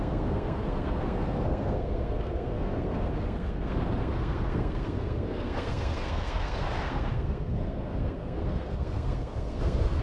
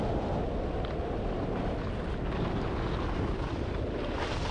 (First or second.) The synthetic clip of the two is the first